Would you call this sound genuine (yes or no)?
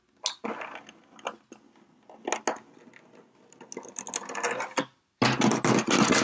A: yes